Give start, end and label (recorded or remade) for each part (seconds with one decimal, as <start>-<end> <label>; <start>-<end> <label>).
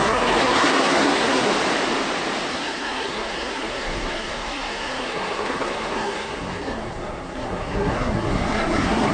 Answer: 0.0-1.5 remade; 1.5-2.5 recorded; 2.5-9.1 remade